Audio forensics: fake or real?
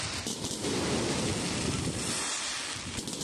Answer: real